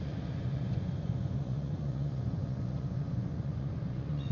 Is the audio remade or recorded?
remade